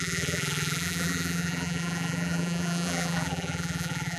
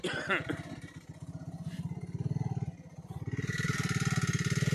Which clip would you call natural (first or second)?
second